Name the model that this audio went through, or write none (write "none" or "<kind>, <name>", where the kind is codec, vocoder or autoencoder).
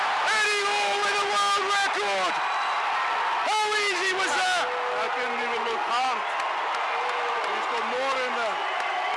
none